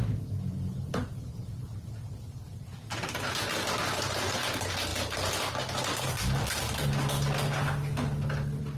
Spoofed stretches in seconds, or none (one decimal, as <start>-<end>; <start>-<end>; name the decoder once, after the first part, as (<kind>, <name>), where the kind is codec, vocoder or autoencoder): none

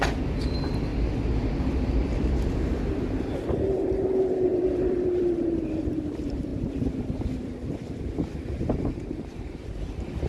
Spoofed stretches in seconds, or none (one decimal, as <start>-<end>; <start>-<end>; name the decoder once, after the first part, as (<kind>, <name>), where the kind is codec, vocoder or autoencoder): 0.0-0.9 (vocoder, BigVGAN v2); 1.5-6.5; 8.3-10.3

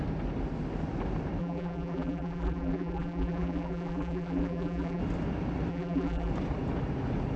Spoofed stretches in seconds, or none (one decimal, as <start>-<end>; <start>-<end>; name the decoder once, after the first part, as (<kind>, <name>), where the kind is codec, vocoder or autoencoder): 1.4-5.0 (vocoder, BigVGAN v2); 5.7-6.3

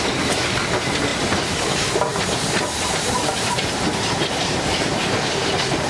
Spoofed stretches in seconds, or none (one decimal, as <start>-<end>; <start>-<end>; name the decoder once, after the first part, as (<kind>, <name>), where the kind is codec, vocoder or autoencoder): 0.0-5.9 (vocoder, BigVGAN v2)